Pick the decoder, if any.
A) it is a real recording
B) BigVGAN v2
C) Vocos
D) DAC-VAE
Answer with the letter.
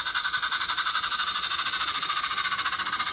B